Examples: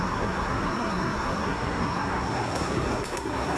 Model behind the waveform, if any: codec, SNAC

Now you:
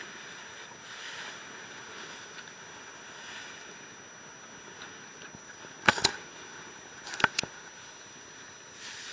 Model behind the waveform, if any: none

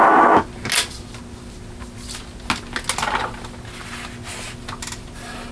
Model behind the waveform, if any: none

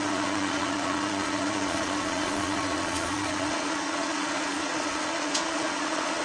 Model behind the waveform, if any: vocoder, Vocos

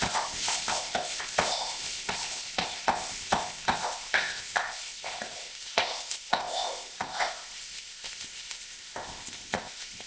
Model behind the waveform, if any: codec, ZipCodec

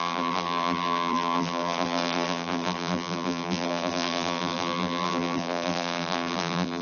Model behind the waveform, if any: vocoder, BigVGAN v2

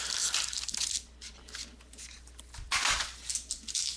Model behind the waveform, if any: none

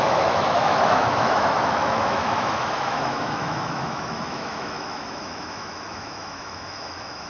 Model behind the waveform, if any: autoencoder, DAC-VAE